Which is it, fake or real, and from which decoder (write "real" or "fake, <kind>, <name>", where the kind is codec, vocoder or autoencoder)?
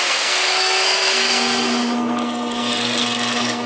fake, codec, SNAC